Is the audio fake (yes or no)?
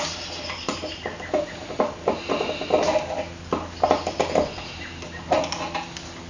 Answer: no